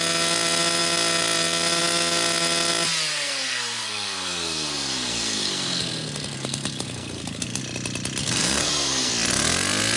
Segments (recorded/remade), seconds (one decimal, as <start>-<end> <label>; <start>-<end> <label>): 0.0-3.1 recorded; 3.1-7.6 remade; 7.6-8.2 recorded; 8.2-9.1 remade; 9.1-10.0 recorded